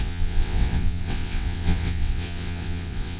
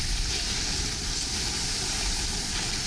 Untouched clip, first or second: second